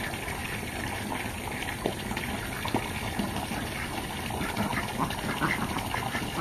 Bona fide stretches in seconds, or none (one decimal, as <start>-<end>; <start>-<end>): 0.0-6.4

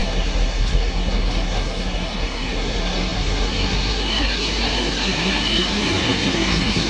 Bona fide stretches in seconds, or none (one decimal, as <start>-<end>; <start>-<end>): none